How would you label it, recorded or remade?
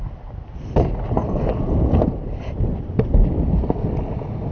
recorded